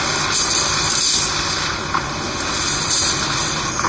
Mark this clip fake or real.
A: real